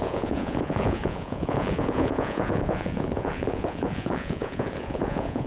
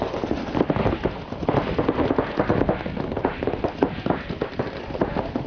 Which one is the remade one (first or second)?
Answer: first